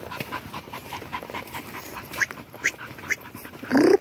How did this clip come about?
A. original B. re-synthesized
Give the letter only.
B